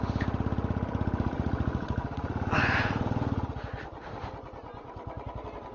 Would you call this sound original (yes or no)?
no